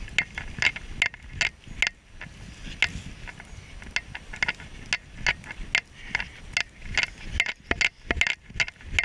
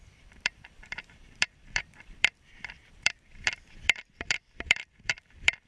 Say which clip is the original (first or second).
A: first